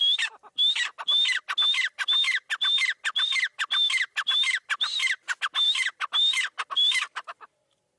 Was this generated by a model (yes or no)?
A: no